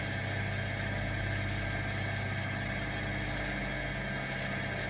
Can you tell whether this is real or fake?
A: real